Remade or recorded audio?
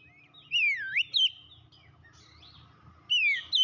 recorded